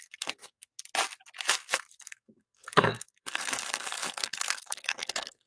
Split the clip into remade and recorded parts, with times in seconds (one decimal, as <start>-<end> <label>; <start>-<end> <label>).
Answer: 0.0-0.7 remade; 0.7-1.5 recorded; 1.5-5.5 remade